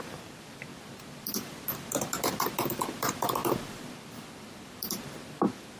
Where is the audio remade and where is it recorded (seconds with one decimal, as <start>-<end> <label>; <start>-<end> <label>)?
0.0-5.8 remade